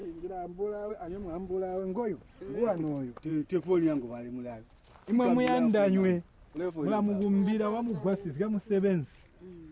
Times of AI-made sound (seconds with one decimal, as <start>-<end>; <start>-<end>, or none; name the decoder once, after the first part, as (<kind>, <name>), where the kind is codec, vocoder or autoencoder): none